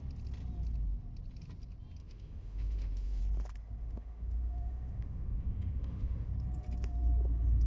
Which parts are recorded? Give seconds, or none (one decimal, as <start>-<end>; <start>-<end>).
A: 0.0-2.0; 3.2-3.8; 6.3-7.7